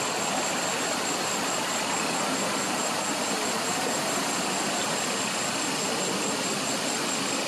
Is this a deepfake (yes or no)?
no